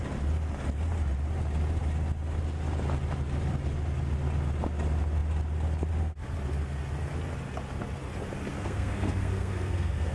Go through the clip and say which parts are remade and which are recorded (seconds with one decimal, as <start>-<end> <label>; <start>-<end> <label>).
0.0-8.5 recorded; 8.5-10.1 remade

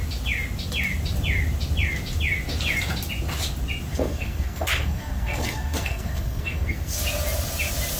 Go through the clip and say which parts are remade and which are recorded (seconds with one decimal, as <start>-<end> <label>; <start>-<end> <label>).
0.0-3.9 recorded; 3.9-7.0 remade; 7.0-8.0 recorded

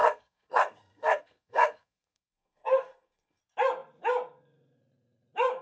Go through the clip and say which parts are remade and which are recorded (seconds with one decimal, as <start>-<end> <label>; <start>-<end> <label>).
0.0-3.4 remade; 3.4-5.6 recorded

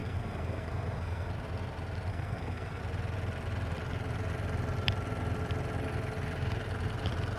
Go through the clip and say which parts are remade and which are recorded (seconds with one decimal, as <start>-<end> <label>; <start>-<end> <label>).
0.0-1.3 remade; 1.3-2.1 recorded; 2.1-2.8 remade; 2.8-7.4 recorded